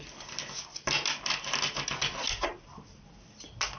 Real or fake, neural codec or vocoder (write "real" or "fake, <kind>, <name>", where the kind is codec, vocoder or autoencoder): real